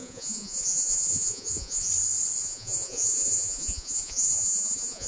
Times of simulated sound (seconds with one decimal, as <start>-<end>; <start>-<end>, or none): 0.0-1.9; 2.4-5.1